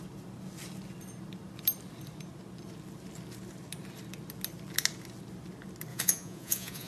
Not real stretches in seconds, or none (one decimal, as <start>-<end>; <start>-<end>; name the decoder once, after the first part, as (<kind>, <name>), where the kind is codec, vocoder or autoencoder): 5.9-6.9 (vocoder, Vocos)